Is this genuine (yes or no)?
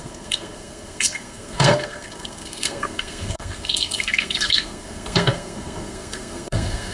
no